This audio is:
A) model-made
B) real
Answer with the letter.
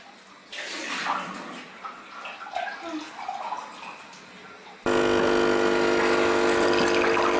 B